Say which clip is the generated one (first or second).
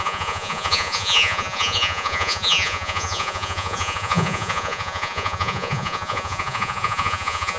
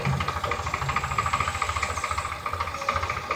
first